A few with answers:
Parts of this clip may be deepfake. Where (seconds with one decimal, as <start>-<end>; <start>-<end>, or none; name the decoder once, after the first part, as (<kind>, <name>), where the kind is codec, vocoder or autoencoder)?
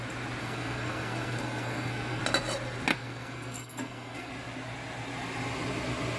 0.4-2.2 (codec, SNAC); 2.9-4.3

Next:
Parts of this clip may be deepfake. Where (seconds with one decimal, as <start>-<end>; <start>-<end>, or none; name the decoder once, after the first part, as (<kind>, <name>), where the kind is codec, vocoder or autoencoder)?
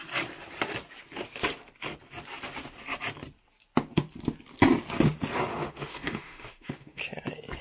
5.5-7.0 (autoencoder, DAC-VAE)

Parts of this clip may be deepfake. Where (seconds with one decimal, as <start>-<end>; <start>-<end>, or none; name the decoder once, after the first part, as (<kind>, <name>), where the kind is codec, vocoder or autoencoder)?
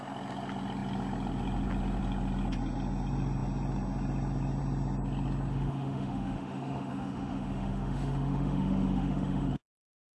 5.5-10.2 (autoencoder, DAC-VAE)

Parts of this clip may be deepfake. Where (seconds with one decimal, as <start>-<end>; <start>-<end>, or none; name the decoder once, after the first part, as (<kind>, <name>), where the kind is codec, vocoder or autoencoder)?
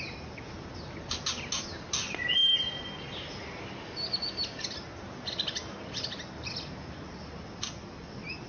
none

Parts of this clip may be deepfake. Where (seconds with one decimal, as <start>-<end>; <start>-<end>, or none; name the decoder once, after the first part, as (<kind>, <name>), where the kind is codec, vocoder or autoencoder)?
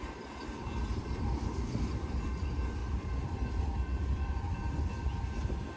0.9-2.4 (vocoder, BigVGAN v2); 2.8-4.9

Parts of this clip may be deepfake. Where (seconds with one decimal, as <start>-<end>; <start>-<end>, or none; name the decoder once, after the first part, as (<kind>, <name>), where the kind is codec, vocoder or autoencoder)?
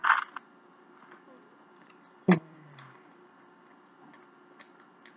1.7-3.7 (vocoder, BigVGAN v2)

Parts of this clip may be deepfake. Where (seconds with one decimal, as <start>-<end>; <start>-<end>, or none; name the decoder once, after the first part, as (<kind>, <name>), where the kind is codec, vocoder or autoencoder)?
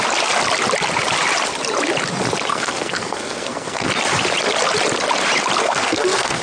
2.5-3.9 (codec, SNAC); 5.6-6.4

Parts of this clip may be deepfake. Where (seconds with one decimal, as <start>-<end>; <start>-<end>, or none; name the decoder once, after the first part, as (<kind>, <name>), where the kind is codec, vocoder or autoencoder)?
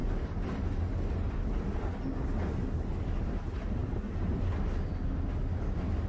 none